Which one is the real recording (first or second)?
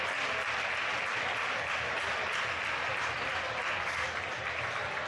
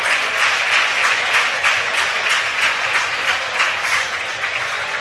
first